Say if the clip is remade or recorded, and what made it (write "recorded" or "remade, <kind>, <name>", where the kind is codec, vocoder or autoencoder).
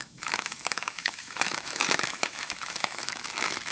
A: remade, autoencoder, DAC-VAE